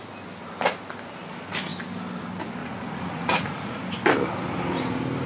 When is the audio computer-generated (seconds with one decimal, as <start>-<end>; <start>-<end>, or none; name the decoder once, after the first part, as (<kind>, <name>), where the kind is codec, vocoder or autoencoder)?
2.6-3.8 (vocoder, Vocos)